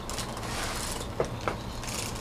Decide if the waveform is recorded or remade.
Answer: recorded